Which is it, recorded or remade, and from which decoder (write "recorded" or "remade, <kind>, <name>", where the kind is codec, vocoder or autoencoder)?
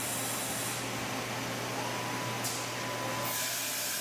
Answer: recorded